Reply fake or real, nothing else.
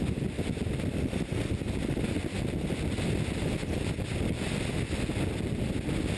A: real